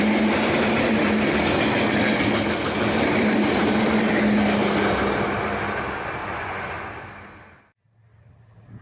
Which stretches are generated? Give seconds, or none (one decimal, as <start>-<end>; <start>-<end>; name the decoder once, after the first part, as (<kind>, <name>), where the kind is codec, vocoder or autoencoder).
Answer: 6.2-6.7 (vocoder, Vocos)